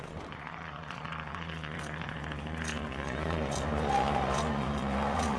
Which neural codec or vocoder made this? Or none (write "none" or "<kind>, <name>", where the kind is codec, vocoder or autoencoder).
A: vocoder, Vocos